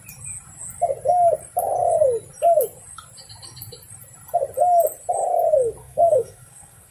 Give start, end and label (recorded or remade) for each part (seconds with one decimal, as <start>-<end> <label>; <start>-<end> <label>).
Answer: 0.0-5.8 recorded; 5.8-6.9 remade